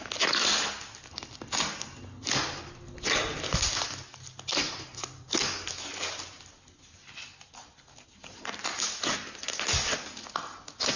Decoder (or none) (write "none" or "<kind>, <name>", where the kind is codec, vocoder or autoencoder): none